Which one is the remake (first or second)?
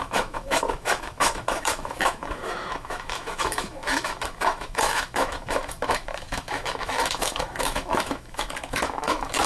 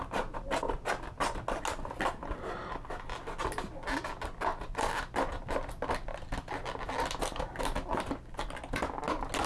first